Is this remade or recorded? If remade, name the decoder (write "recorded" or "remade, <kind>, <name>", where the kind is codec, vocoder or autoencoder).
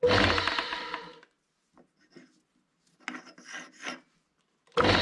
recorded